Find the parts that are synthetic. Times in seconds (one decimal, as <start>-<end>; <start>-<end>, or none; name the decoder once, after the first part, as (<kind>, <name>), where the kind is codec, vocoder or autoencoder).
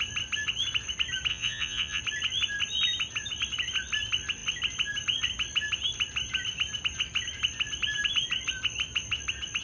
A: 1.3-2.0 (vocoder, Vocos)